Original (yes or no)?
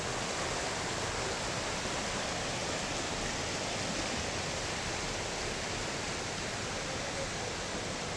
yes